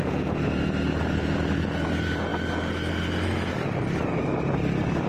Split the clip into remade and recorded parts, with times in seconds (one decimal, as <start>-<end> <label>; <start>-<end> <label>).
0.0-5.1 recorded